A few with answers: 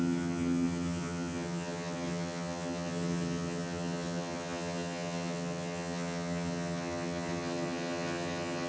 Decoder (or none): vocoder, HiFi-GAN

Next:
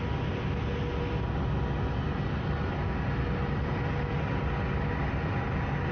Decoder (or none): none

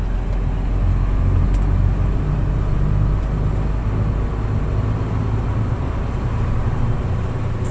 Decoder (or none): none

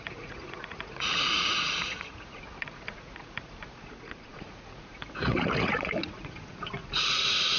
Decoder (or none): vocoder, Vocos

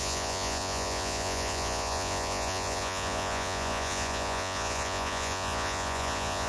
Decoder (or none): vocoder, Vocos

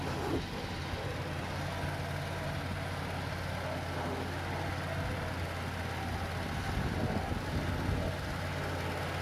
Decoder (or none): none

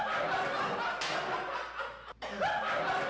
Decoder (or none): none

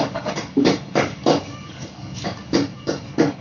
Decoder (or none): codec, DAC